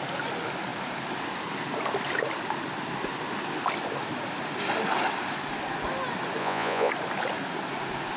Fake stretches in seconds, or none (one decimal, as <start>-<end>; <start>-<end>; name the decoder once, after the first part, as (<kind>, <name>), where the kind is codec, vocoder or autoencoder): 6.4-6.9 (vocoder, Vocos)